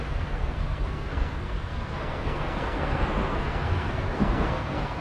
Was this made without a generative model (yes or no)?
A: no